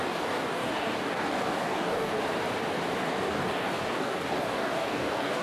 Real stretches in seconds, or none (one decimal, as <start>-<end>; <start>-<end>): 2.1-3.0